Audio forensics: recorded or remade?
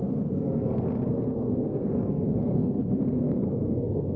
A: remade